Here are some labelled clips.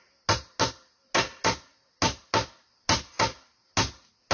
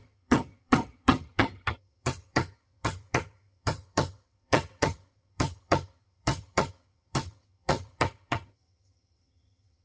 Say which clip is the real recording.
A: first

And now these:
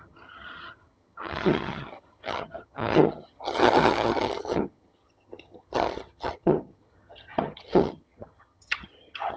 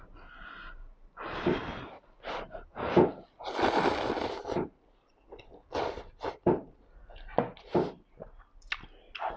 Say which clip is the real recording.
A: second